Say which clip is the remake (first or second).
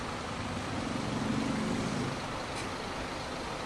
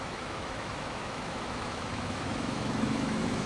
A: second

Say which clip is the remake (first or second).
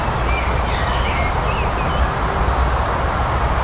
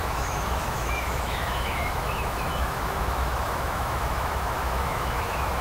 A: second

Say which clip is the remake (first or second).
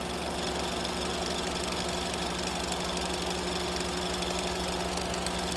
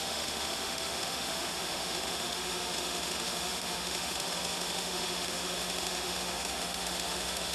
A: second